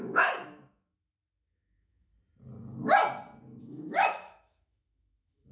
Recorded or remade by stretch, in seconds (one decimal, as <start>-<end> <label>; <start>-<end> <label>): 0.0-2.1 remade; 2.1-3.6 recorded; 3.6-5.5 remade